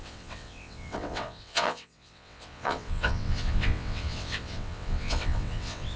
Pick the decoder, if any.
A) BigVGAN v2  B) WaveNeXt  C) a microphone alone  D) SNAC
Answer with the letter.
B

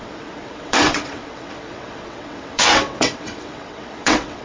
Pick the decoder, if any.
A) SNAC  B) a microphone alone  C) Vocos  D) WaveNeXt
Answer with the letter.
D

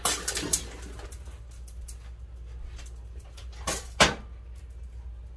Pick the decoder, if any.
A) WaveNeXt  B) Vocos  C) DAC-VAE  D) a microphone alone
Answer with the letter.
D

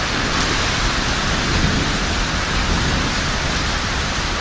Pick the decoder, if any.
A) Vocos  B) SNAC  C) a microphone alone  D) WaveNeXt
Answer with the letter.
C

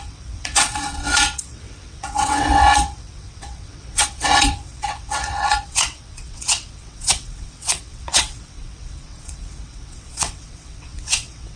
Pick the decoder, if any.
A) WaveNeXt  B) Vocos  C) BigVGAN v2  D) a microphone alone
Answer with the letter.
A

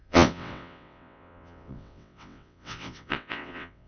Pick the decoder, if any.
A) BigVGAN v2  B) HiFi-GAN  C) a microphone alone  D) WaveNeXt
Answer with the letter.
D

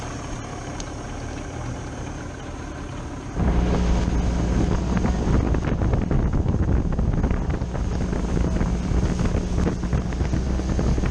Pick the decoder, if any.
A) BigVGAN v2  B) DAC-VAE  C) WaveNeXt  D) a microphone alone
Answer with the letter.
D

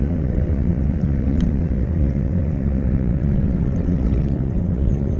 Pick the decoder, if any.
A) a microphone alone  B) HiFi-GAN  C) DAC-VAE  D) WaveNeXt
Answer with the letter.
D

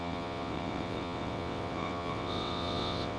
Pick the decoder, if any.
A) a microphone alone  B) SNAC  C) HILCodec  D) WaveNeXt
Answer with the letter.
D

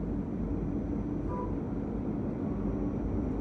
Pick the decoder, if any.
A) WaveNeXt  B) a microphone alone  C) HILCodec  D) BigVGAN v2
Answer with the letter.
B